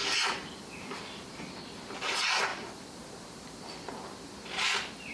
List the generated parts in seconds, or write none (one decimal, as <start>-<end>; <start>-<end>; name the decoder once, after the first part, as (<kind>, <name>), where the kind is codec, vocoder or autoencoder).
none